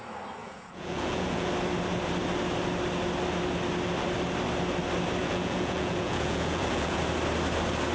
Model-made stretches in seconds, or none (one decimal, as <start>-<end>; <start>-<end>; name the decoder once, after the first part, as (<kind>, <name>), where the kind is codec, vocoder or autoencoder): 0.4-1.5 (vocoder, Vocos); 5.2-7.0